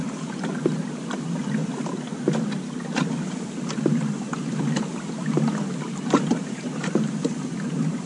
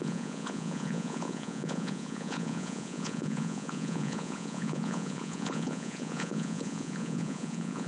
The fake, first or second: second